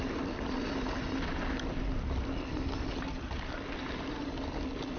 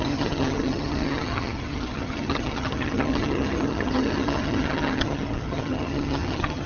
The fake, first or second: second